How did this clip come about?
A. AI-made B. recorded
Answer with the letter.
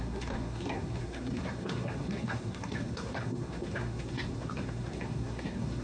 A